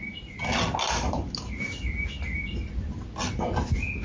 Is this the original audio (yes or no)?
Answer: yes